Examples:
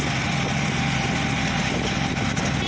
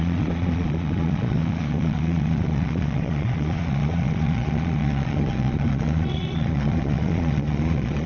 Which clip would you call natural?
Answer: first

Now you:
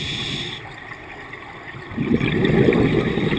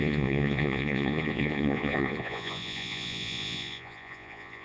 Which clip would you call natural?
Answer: first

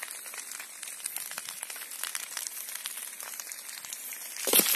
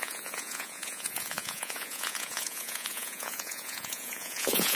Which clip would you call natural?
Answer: first